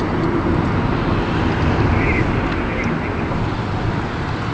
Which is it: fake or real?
real